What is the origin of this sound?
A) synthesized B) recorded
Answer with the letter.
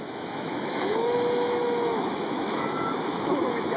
A